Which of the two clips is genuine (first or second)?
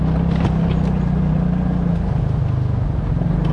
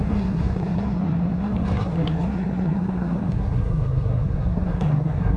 first